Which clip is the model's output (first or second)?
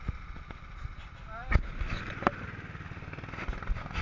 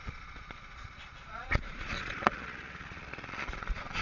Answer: second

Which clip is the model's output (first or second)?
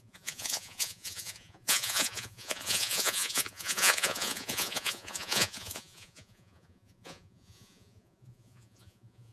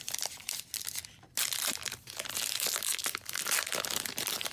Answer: first